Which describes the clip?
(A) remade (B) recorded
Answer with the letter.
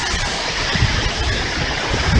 B